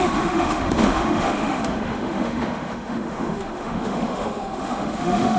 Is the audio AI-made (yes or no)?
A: yes